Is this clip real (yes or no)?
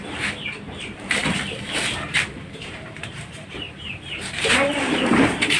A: no